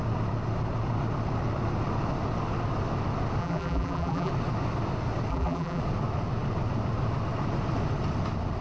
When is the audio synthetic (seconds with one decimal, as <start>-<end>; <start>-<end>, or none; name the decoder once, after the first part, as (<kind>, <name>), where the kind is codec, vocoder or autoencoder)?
3.4-4.3 (vocoder, BigVGAN v2); 5.3-5.8